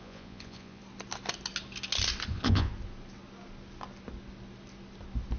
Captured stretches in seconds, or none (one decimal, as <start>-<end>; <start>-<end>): 0.8-2.3; 2.7-5.4

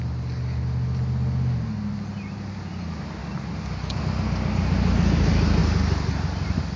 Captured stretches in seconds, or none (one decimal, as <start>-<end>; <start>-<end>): 0.0-6.8

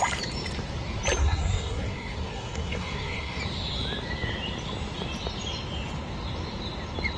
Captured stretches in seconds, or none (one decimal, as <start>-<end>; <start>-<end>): 0.0-1.2; 3.4-7.2

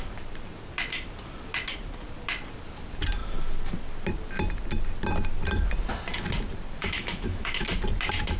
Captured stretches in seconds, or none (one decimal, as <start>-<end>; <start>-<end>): 0.0-6.8; 7.7-8.4

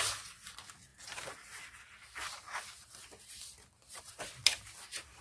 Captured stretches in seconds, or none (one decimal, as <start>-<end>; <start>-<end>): 0.0-5.2

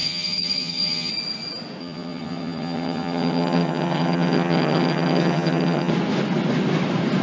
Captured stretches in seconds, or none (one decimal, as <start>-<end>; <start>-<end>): 1.1-1.8; 5.9-7.2